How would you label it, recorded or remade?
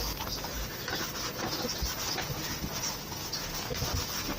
recorded